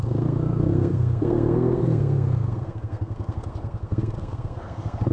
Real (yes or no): no